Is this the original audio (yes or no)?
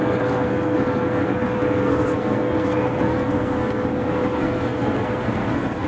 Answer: no